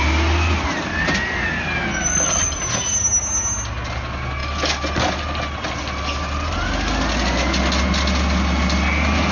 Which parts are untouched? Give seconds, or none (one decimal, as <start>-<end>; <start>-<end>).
0.0-9.3